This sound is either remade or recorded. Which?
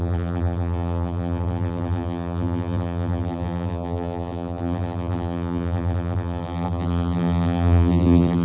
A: remade